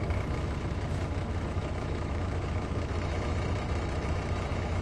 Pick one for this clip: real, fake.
fake